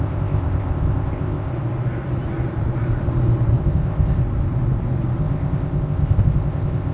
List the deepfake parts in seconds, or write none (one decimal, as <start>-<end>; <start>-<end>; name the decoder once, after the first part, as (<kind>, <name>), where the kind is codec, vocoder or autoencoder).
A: 0.0-1.5 (codec, ZipCodec); 3.6-4.2; 5.2-6.9